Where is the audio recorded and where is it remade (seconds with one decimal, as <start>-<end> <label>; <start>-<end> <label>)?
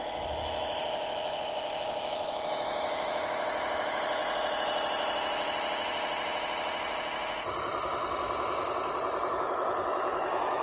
0.0-4.2 remade; 4.2-9.4 recorded; 9.4-10.6 remade